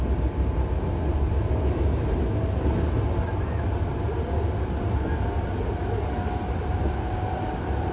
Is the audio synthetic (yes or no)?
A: no